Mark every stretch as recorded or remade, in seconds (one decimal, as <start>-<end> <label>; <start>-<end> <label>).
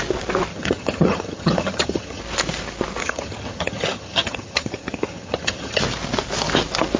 0.0-0.5 recorded; 0.5-2.2 remade; 2.2-3.0 recorded; 3.0-5.8 remade; 5.8-7.0 recorded